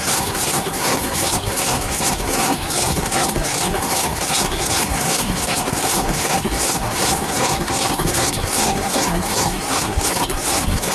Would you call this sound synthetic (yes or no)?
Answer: yes